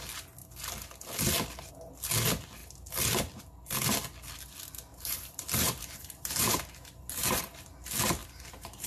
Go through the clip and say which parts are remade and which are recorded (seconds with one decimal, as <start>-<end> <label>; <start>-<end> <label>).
0.0-4.9 recorded; 4.9-7.4 remade; 7.4-8.2 recorded; 8.2-8.9 remade